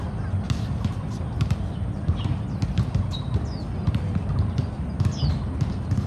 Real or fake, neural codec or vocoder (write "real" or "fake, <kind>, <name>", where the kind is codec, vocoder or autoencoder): real